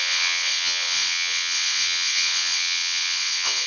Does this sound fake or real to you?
fake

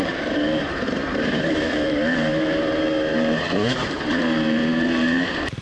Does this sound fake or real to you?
fake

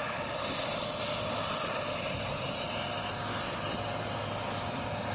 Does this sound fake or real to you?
real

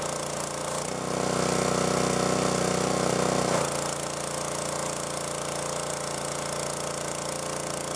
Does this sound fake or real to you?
real